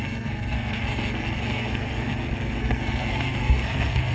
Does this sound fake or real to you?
fake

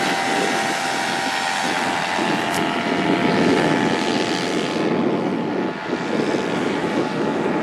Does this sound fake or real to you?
real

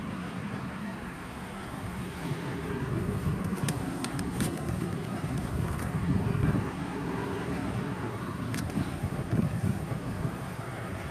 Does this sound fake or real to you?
fake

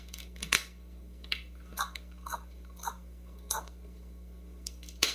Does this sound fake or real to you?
fake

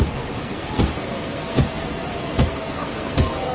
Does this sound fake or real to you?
fake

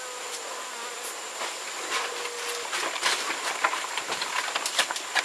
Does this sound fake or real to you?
real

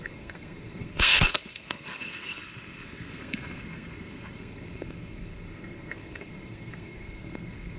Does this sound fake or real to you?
fake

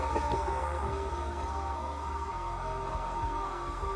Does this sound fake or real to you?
fake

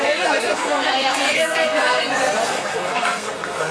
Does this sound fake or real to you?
fake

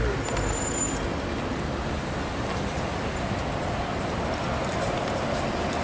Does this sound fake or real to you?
real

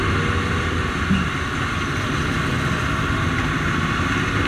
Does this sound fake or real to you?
real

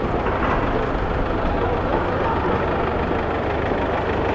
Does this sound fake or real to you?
real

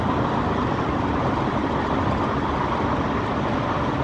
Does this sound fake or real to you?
real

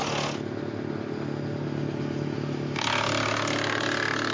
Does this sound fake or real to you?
real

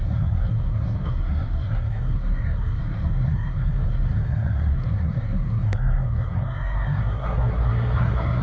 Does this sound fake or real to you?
fake